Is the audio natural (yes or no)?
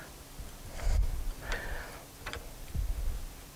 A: yes